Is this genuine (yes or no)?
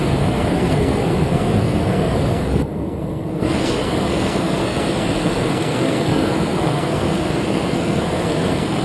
no